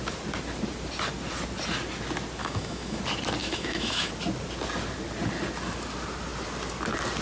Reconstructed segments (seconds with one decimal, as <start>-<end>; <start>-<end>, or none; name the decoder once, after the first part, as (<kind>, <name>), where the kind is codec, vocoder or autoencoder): 2.4-3.0 (autoencoder, DAC-VAE); 3.4-4.1